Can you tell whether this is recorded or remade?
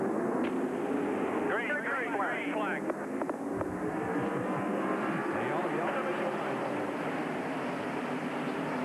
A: recorded